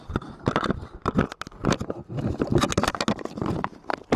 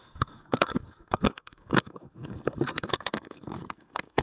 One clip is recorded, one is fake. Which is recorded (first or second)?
first